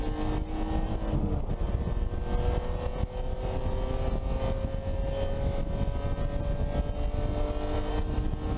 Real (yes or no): yes